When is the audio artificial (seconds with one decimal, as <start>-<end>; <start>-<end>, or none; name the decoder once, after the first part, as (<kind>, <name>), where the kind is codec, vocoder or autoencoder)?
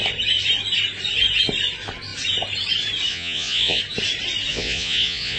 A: 3.1-3.8 (vocoder, Vocos); 4.5-5.4